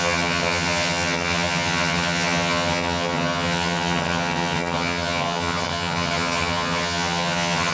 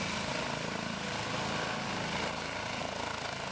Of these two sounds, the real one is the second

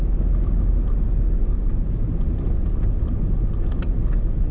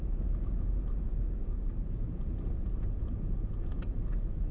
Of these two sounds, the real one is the first